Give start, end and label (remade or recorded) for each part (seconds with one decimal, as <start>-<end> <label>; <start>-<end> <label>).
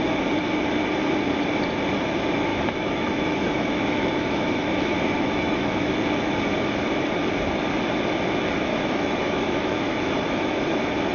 0.0-2.5 recorded; 2.5-6.0 remade; 6.0-8.7 recorded; 8.7-10.6 remade; 10.6-11.1 recorded